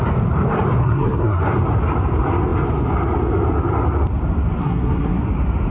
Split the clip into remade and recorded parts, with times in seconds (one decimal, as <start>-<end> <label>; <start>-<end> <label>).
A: 0.0-0.8 recorded; 0.8-1.4 remade; 1.4-4.6 recorded; 4.6-5.2 remade; 5.2-5.7 recorded